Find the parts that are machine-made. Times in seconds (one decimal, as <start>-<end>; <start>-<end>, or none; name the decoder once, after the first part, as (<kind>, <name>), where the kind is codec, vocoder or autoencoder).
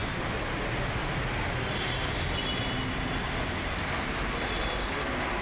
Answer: none